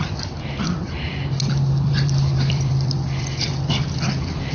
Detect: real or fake fake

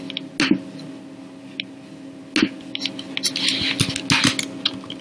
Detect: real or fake real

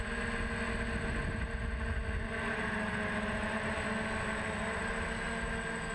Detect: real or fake real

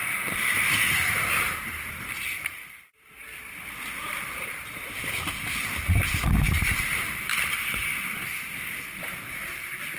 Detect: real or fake fake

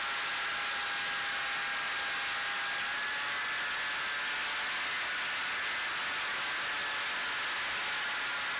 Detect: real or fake real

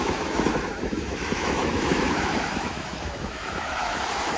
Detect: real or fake fake